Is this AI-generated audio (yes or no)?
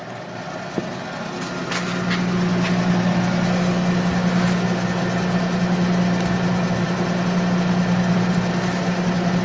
no